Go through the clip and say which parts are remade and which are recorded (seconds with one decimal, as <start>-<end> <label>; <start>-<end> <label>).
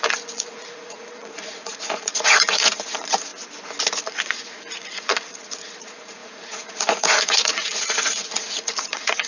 0.0-3.3 remade; 3.3-4.0 recorded; 4.0-9.3 remade